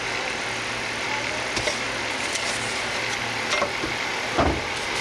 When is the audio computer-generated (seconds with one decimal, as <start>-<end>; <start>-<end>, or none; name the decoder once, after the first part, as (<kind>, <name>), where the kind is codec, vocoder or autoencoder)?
none